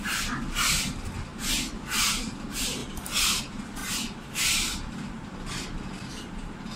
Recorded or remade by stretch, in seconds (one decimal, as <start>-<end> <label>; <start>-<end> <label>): 0.0-6.8 recorded